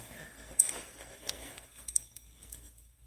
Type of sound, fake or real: fake